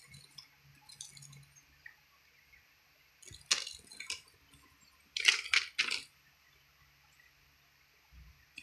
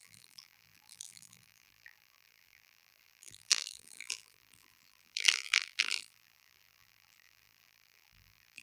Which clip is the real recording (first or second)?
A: first